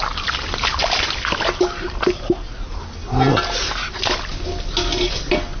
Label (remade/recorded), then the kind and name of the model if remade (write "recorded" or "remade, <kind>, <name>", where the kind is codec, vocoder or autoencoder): recorded